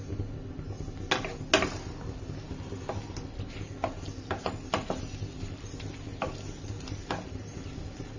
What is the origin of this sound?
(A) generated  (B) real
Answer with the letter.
B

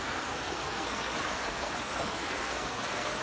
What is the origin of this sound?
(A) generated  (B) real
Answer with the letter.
A